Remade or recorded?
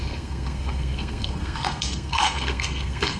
remade